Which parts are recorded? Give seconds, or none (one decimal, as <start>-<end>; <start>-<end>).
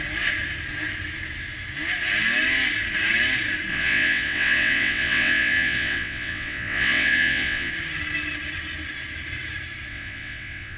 0.0-3.7; 7.7-9.9